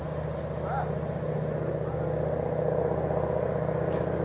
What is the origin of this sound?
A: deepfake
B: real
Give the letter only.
B